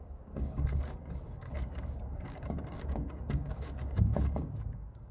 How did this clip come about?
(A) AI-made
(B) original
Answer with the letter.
A